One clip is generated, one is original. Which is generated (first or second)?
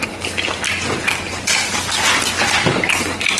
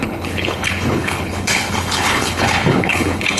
second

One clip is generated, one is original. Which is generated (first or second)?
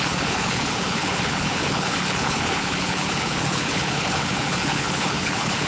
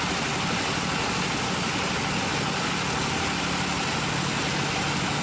first